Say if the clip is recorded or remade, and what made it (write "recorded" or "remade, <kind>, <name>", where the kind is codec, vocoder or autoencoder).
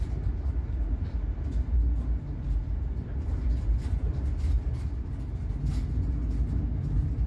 recorded